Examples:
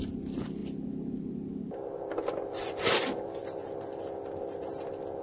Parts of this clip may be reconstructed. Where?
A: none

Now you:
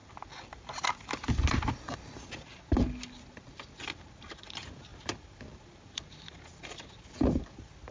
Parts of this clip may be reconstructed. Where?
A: none

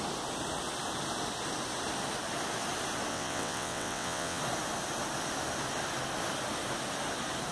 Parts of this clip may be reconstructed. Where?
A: 3.1-4.4 (vocoder, WaveNeXt)

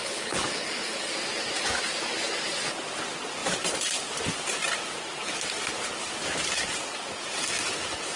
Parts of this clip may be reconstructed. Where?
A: 0.0-1.1 (codec, HILCodec)

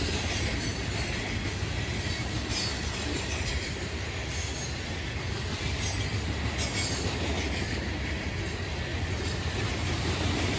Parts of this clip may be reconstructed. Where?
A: 2.7-4.1 (vocoder, BigVGAN v2); 8.9-9.7

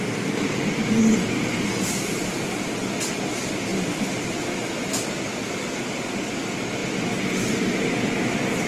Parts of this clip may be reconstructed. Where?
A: 3.7-4.4 (vocoder, BigVGAN v2)

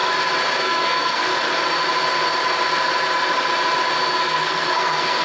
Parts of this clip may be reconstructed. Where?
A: 0.6-1.3 (codec, SNAC); 4.2-5.2